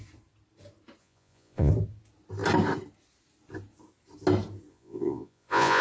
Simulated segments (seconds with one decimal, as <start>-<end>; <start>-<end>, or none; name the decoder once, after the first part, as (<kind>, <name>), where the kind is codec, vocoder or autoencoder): 1.0-1.7 (vocoder, Vocos); 4.7-5.8